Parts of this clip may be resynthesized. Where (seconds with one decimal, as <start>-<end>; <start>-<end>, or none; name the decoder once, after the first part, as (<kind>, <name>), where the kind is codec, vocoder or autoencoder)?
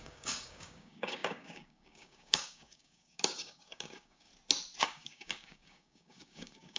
0.0-4.3 (codec, DAC); 4.8-6.8